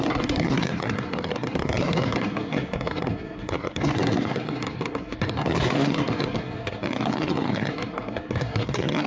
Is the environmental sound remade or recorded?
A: remade